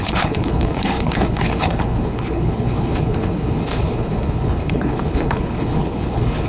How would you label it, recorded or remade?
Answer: remade